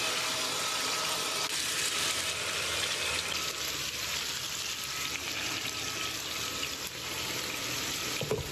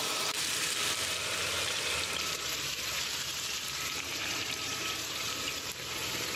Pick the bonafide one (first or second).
first